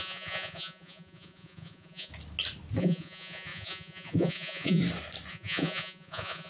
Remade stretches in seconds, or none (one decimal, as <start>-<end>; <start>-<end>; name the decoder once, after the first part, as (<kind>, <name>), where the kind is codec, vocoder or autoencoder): 0.0-2.1 (vocoder, Vocos); 2.8-4.8; 5.3-6.5